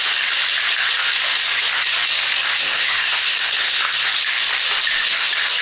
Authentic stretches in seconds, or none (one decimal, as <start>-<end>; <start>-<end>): 0.0-2.6; 3.9-5.6